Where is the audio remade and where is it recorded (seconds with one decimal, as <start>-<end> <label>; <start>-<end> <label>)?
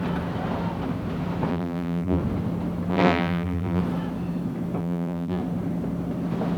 0.0-1.5 recorded; 1.5-2.2 remade; 2.2-2.9 recorded; 2.9-3.8 remade; 3.8-4.8 recorded; 4.8-5.4 remade; 5.4-6.6 recorded